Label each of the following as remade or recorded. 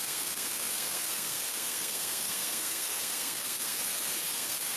remade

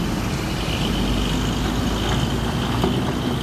recorded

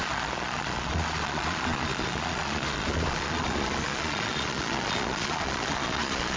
remade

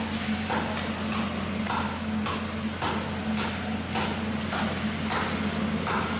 recorded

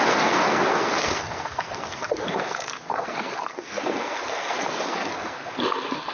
remade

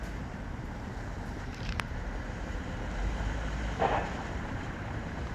remade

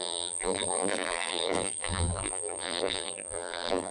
remade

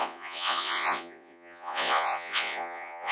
remade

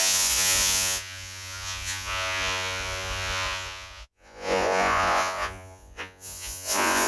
remade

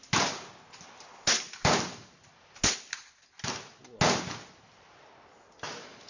recorded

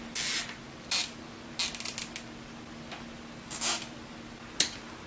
recorded